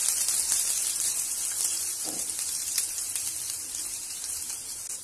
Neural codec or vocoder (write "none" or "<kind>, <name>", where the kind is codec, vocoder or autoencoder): vocoder, BigVGAN v2